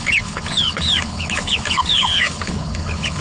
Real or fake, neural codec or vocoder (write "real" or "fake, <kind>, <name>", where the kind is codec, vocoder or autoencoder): fake, codec, HILCodec